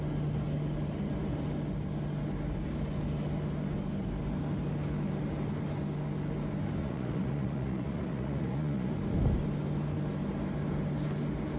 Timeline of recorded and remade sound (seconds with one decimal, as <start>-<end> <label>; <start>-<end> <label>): 0.0-6.8 recorded; 6.8-8.9 remade; 8.9-11.6 recorded